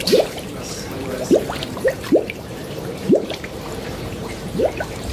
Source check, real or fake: fake